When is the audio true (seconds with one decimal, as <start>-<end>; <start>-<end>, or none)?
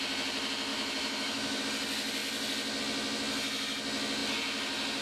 0.0-0.7; 1.6-5.0